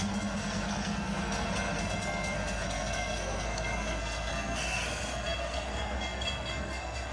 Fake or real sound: fake